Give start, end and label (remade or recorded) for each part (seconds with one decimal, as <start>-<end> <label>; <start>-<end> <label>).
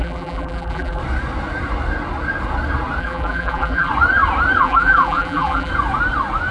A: 0.0-1.0 remade; 1.0-3.0 recorded; 3.0-3.9 remade; 3.9-4.6 recorded; 4.6-5.7 remade; 5.7-6.5 recorded